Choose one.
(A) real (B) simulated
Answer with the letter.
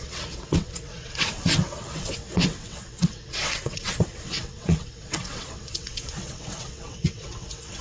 B